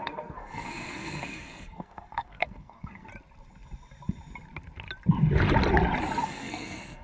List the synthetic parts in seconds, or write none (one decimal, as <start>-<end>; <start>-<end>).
0.0-3.1; 6.2-7.0